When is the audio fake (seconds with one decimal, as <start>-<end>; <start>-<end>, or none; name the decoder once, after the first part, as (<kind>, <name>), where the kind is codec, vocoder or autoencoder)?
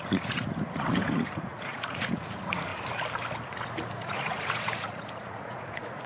0.0-2.7 (vocoder, Vocos); 3.4-6.1